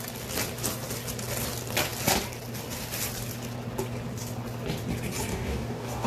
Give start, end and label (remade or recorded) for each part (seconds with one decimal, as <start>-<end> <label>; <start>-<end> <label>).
0.0-5.3 recorded; 5.3-6.1 remade